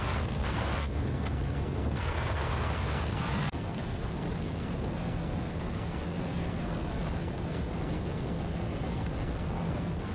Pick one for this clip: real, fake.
fake